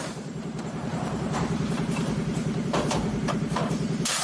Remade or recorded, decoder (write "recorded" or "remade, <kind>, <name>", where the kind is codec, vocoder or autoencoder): remade, vocoder, BigVGAN v2